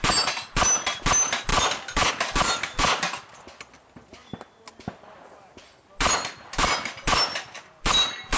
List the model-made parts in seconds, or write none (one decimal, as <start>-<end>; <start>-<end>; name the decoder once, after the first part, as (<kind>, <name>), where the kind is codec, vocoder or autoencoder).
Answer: none